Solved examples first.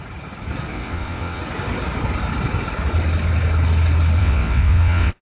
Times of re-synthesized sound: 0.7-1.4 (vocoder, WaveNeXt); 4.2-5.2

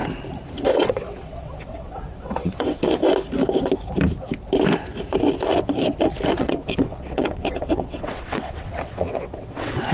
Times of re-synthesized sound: 0.7-3.0 (vocoder, WaveNeXt); 6.4-9.9

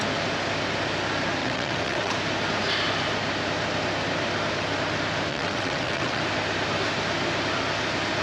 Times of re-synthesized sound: 1.4-2.1 (vocoder, WaveNeXt); 5.3-6.2

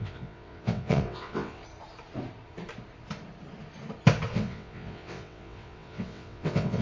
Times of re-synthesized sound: 0.0-1.6 (vocoder, WaveNeXt); 4.3-6.8

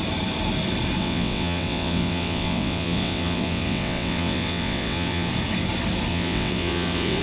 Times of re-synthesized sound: 1.0-5.3 (vocoder, WaveNeXt); 6.1-7.2

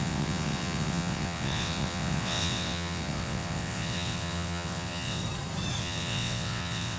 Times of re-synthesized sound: 0.0-5.2 (vocoder, WaveNeXt); 5.8-7.0

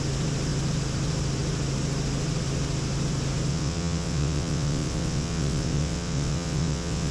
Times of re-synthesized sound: 3.5-7.1 (vocoder, WaveNeXt)